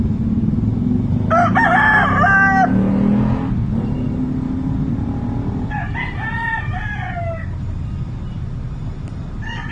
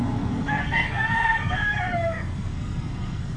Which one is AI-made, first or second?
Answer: second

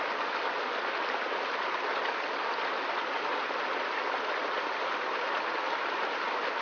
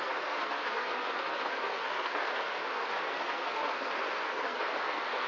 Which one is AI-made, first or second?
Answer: second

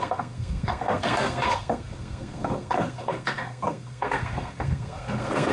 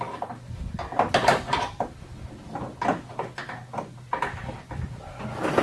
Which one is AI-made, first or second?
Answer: first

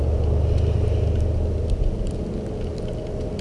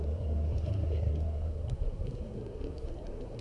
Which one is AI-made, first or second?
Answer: second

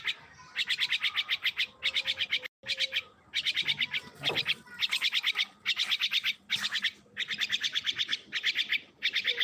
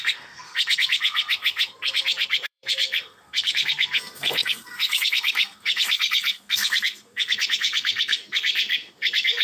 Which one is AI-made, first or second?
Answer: second